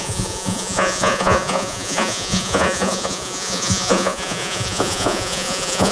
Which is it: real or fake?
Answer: fake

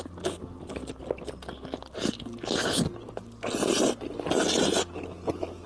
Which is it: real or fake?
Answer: real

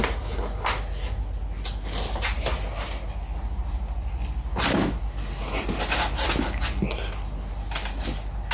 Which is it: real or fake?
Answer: real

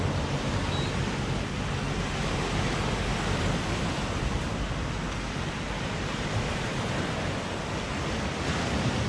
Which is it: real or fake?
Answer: real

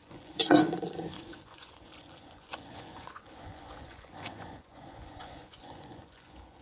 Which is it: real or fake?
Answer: fake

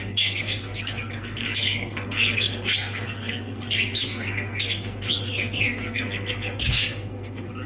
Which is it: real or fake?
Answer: fake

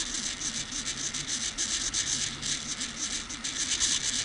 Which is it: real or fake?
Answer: real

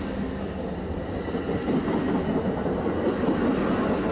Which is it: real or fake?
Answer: real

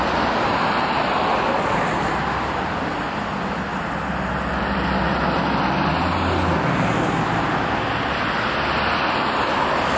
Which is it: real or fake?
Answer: real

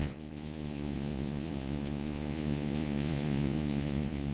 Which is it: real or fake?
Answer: fake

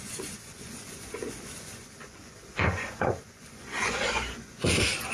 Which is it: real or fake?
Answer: fake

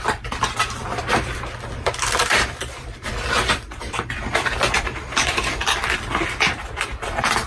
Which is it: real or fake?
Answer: fake